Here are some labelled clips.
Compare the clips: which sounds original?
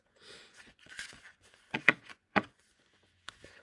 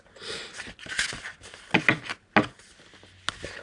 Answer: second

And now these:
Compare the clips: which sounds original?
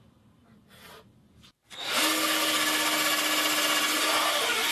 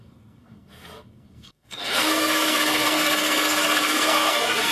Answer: first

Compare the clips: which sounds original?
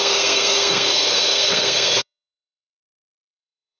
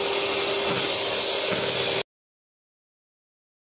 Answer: second